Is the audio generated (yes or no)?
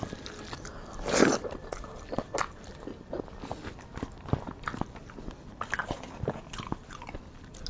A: no